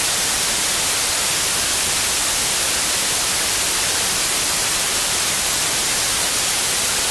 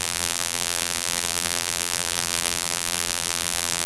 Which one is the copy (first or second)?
second